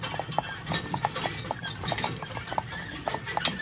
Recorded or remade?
recorded